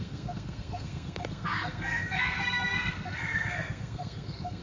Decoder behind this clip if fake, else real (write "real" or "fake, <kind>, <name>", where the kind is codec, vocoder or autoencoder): fake, codec, SNAC